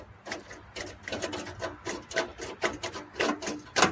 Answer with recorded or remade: recorded